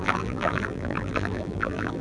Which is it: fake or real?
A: fake